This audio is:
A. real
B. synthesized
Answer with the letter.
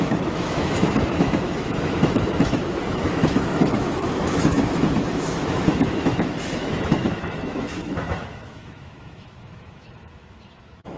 B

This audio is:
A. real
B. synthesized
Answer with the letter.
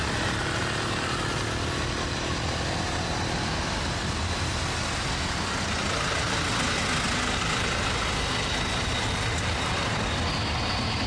A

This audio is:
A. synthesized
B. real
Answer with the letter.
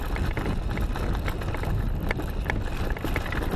B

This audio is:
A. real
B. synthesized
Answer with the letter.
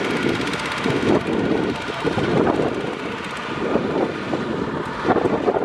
A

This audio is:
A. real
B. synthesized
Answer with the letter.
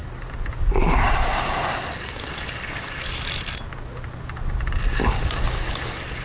A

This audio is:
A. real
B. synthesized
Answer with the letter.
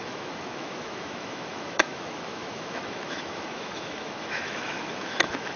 B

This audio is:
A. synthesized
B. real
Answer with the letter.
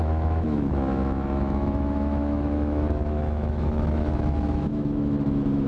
A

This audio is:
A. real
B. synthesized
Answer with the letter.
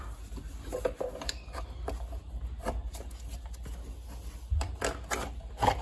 A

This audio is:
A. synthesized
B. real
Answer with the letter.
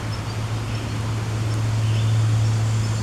B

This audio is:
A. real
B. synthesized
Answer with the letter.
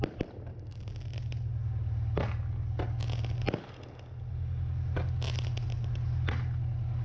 A